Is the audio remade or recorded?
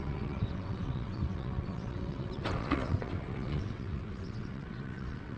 remade